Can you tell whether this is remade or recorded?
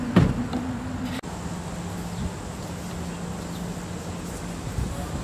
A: recorded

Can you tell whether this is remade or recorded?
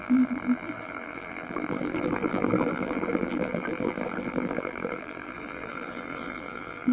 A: remade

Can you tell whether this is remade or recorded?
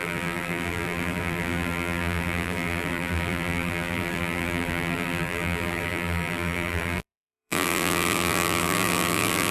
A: remade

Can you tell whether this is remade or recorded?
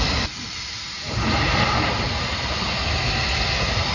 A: recorded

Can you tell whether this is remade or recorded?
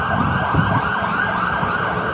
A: recorded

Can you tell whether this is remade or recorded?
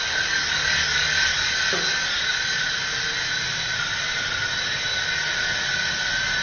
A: recorded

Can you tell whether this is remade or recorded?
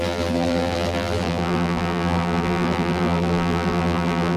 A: remade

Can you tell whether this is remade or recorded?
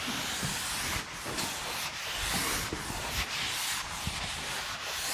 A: recorded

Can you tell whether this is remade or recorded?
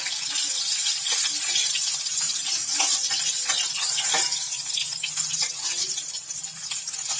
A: recorded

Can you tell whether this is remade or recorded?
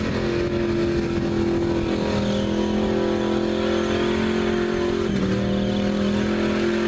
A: recorded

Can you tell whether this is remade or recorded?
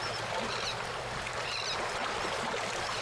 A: remade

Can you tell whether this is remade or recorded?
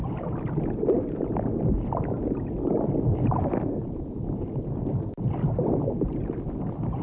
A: recorded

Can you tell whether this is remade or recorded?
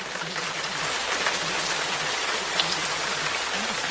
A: recorded